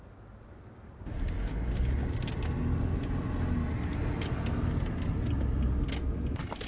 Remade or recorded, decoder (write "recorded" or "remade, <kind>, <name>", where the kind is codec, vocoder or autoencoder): recorded